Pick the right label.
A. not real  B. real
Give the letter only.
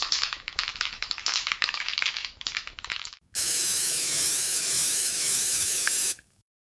A